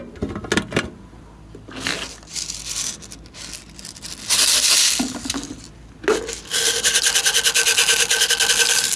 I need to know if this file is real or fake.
real